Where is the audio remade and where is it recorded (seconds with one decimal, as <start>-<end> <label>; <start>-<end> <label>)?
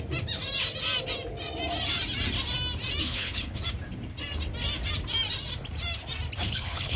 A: 0.0-3.0 recorded; 3.0-3.6 remade; 3.6-6.4 recorded; 6.4-7.0 remade